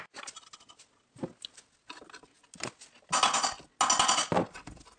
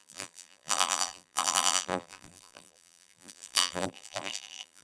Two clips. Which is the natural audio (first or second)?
first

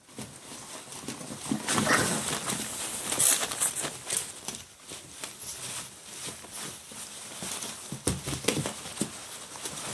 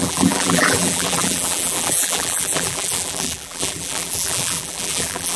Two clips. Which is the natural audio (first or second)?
first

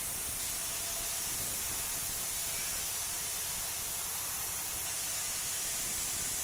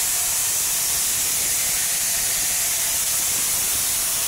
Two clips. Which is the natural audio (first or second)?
first